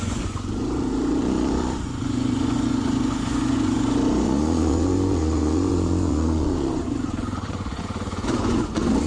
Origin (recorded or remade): remade